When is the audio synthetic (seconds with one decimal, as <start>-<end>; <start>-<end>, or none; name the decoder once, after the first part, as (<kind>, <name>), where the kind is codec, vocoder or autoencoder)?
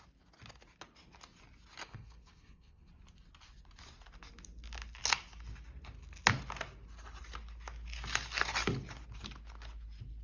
1.8-2.9 (codec, SNAC)